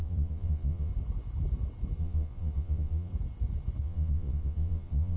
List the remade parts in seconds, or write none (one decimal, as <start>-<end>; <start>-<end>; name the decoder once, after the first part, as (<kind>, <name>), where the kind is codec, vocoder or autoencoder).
0.0-0.9 (vocoder, Vocos); 2.0-3.1; 3.8-5.2